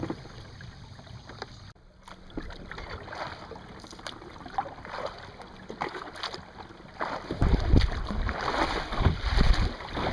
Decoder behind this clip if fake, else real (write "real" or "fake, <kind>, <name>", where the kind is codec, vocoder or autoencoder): real